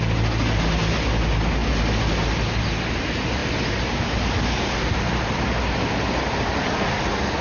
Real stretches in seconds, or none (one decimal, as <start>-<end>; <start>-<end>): 0.0-7.4